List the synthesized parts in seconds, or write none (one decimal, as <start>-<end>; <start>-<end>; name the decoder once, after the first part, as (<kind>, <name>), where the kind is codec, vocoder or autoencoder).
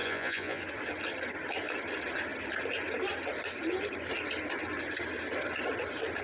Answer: 0.0-0.6 (vocoder, Vocos)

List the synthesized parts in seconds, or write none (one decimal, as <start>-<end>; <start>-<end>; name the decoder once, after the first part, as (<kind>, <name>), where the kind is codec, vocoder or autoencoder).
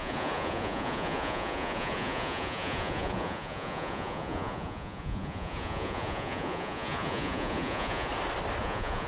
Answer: 0.0-8.1 (vocoder, Vocos); 8.6-9.1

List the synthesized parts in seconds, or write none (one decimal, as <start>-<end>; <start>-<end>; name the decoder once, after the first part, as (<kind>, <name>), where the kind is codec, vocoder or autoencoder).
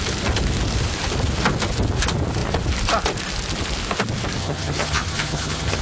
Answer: 4.4-5.8 (vocoder, HiFi-GAN)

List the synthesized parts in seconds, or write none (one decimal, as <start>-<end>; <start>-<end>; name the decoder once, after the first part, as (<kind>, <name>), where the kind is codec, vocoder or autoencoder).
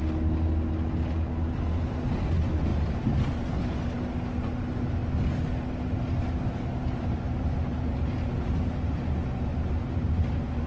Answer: none